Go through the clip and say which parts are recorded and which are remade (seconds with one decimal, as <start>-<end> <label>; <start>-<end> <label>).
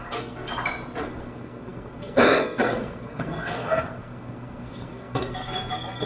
0.0-0.5 remade; 0.5-1.0 recorded; 1.0-6.0 remade